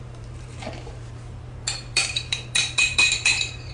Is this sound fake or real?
fake